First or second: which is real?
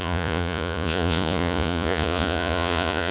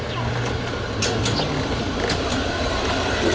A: second